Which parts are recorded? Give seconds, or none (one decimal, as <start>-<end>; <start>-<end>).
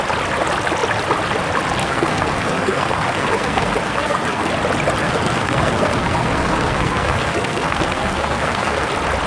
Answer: 0.0-1.8; 4.5-5.0; 8.9-9.3